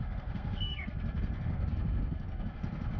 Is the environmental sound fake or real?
fake